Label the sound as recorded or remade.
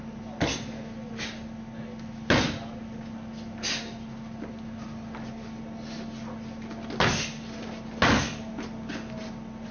recorded